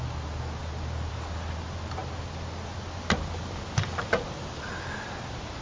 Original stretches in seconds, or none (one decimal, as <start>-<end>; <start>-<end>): 0.0-5.6